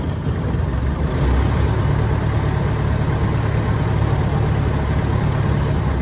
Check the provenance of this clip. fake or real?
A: real